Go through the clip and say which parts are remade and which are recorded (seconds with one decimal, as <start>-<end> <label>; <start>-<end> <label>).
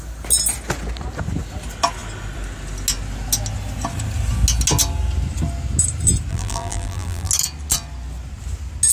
0.0-6.3 recorded; 6.3-7.3 remade; 7.3-8.9 recorded